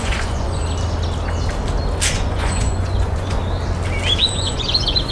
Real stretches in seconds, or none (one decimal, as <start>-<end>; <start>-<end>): 0.6-2.1; 3.4-4.2